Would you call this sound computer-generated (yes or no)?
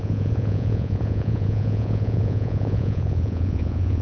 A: yes